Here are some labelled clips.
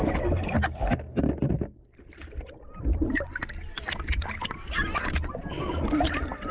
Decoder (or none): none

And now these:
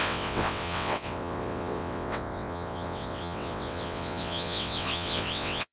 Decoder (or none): vocoder, WaveNeXt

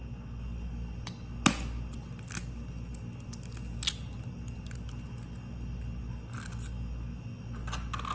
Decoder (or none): none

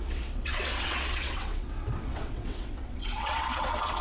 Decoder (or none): vocoder, WaveNeXt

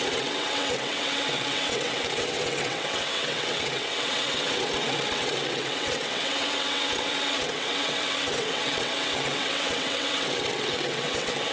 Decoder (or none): vocoder, WaveNeXt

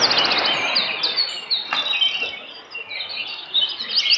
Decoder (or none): none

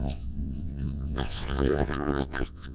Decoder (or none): vocoder, WaveNeXt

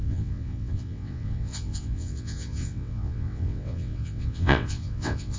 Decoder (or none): vocoder, WaveNeXt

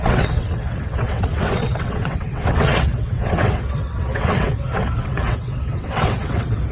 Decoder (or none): vocoder, WaveNeXt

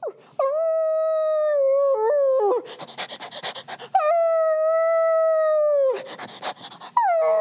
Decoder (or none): none